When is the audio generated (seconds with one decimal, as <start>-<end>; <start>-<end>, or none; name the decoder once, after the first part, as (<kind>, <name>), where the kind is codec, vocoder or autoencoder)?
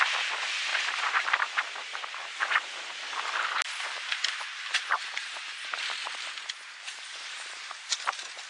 0.7-2.6 (vocoder, BigVGAN v2); 3.9-7.9